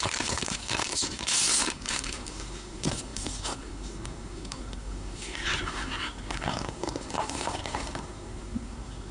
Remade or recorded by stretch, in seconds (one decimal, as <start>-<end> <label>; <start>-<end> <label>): 0.0-9.1 remade